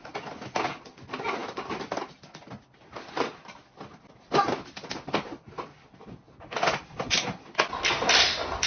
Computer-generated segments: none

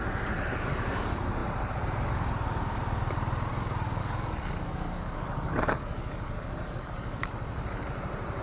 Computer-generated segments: 4.0-7.3 (codec, DAC)

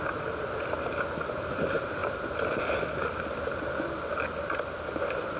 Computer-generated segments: none